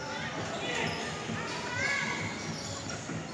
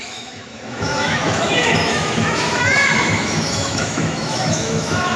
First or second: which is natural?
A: first